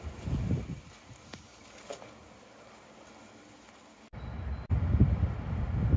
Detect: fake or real real